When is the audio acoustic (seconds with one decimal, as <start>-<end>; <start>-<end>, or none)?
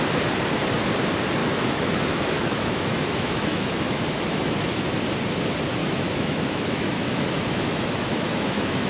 0.0-1.4; 4.9-5.8